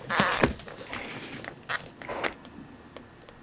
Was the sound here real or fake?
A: real